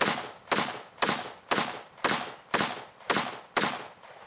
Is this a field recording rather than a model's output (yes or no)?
yes